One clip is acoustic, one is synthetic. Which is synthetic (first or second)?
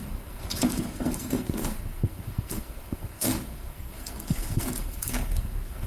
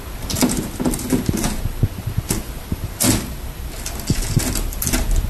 first